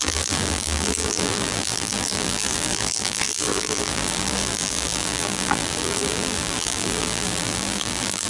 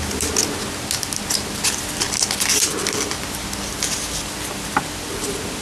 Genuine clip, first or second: second